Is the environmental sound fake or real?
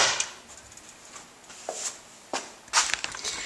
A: real